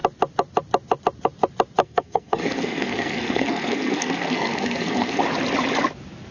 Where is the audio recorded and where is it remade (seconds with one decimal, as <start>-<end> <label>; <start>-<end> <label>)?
0.0-1.8 recorded; 1.8-5.2 remade; 5.2-6.3 recorded